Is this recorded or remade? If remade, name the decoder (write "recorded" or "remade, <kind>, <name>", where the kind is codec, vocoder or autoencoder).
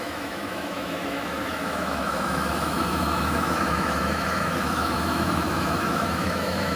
remade, autoencoder, DAC-VAE